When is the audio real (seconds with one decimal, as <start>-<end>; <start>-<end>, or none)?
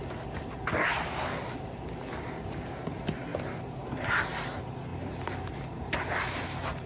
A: 0.0-6.9